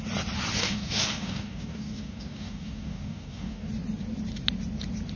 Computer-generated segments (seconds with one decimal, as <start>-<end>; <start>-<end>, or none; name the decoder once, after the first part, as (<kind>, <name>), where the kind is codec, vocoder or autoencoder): 0.6-3.7 (codec, DAC)